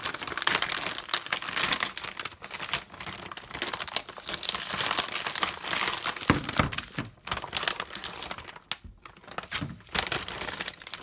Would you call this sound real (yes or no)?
yes